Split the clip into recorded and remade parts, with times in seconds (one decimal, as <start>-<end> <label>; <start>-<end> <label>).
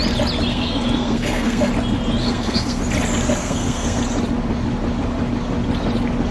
0.0-0.5 recorded; 0.5-1.7 remade; 1.7-2.2 recorded; 2.2-2.8 remade; 2.8-3.4 recorded; 3.4-4.0 remade; 4.0-6.3 recorded